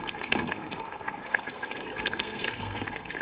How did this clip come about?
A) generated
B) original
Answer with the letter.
A